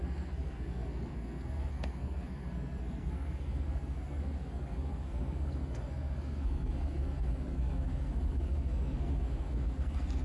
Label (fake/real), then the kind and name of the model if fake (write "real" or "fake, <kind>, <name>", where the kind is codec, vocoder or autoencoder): fake, codec, SNAC